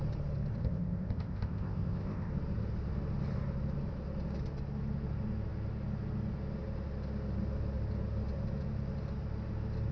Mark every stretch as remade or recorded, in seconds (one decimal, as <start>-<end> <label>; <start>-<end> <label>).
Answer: 0.0-0.6 recorded; 0.6-2.3 remade; 2.3-9.9 recorded